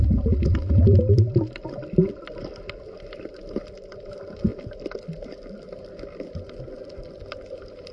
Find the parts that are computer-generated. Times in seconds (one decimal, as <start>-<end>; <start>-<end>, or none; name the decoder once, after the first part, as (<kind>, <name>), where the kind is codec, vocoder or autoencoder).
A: none

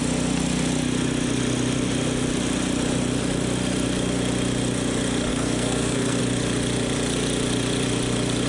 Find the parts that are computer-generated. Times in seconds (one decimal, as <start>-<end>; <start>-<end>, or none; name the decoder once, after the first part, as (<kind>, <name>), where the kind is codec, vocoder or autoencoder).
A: 5.3-6.2 (codec, SNAC)

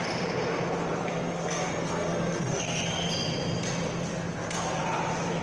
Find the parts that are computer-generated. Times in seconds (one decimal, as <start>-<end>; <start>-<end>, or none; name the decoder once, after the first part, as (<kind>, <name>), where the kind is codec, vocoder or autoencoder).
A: 1.1-3.1 (codec, SNAC)

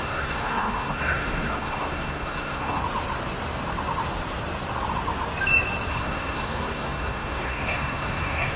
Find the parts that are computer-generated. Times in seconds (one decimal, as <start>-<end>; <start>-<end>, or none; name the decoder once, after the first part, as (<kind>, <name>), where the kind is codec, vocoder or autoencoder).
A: 0.0-2.8 (codec, SNAC); 5.9-8.6

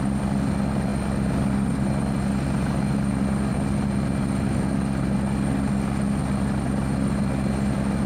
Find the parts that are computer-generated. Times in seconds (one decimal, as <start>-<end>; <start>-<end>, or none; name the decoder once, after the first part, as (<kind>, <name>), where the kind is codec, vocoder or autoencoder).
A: none

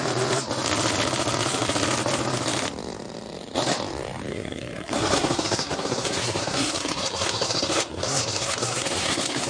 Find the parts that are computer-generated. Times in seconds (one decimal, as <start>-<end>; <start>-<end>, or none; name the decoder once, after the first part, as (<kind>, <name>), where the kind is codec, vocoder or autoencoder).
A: 4.3-9.5 (codec, SNAC)

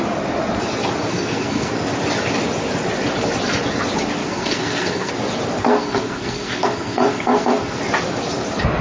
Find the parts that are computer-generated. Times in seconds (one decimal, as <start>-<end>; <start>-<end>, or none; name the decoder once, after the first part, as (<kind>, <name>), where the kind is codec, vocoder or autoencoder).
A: 1.1-1.7 (codec, SNAC); 4.2-5.1; 5.6-7.8